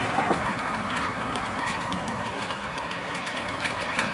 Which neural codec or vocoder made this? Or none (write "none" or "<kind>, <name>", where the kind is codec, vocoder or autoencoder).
codec, SNAC